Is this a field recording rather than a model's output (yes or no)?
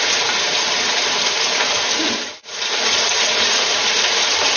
no